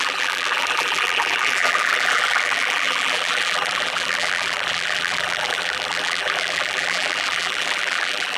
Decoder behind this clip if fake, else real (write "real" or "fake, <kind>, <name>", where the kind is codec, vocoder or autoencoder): fake, vocoder, BigVGAN v2